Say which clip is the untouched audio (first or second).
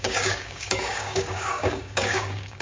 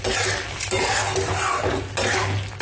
second